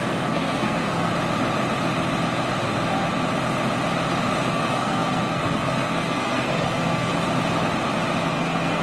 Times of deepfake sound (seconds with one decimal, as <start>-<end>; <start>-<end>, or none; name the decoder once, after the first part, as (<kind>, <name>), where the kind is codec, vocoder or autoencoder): 0.0-1.1 (codec, SNAC); 4.5-7.1; 8.3-8.8